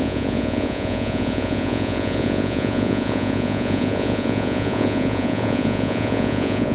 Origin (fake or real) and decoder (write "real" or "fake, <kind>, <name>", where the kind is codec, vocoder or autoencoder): fake, vocoder, Vocos